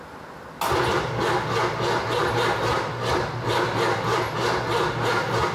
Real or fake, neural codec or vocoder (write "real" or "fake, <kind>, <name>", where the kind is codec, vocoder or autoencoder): real